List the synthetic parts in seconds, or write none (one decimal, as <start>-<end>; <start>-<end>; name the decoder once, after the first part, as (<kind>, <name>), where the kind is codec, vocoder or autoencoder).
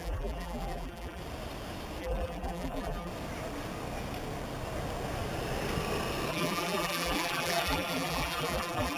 0.0-1.2 (vocoder, BigVGAN v2); 2.0-3.1; 6.3-9.0